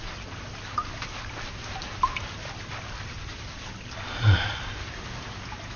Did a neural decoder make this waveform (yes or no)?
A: no